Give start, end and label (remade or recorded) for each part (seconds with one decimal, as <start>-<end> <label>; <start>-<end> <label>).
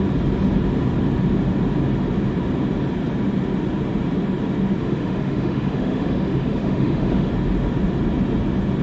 0.0-4.8 recorded; 4.8-7.3 remade; 7.3-8.8 recorded